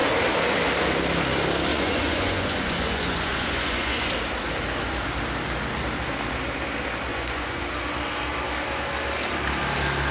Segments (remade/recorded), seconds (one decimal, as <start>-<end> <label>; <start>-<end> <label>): 0.0-1.7 recorded; 1.7-4.1 remade; 4.1-7.1 recorded; 7.1-7.6 remade; 7.6-10.1 recorded